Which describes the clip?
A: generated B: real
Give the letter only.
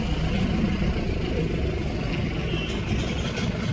B